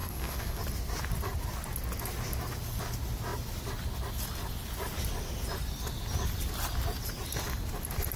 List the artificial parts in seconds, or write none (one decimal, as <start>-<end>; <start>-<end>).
0.0-0.6